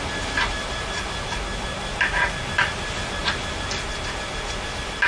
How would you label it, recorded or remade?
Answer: recorded